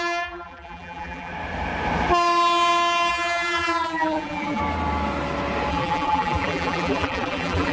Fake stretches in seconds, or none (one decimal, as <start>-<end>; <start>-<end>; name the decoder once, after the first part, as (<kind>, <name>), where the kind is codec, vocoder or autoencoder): 0.0-1.3 (vocoder, BigVGAN v2); 3.1-4.6; 5.7-7.7